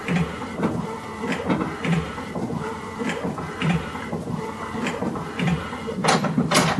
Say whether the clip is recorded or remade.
remade